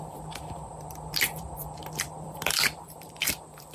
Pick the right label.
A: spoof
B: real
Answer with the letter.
A